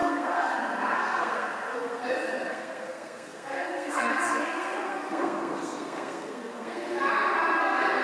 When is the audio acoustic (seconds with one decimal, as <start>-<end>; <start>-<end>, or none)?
7.1-7.6